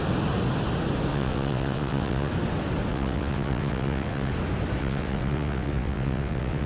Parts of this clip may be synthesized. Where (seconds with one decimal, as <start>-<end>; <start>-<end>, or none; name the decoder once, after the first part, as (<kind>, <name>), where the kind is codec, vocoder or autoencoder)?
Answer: 1.1-2.3 (vocoder, WaveNeXt); 2.9-4.3; 4.8-6.7